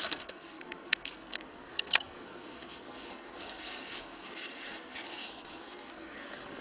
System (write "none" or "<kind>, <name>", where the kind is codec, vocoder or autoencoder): codec, SNAC